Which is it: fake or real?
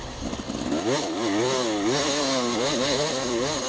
real